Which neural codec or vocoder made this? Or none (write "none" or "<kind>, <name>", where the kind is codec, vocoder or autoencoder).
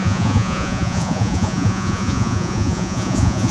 vocoder, Vocos